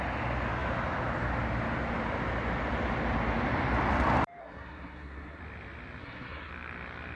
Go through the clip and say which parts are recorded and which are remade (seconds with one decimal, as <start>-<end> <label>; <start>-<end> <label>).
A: 0.0-4.4 recorded; 4.4-5.4 remade; 5.4-6.0 recorded; 6.0-6.5 remade; 6.5-7.2 recorded